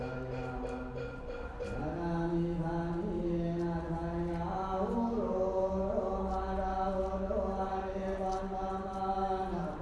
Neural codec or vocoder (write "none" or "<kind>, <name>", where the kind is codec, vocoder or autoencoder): none